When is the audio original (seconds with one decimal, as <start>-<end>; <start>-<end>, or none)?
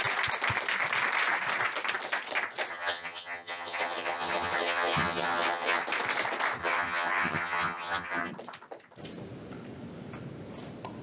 0.0-2.7; 5.8-6.6; 8.3-11.0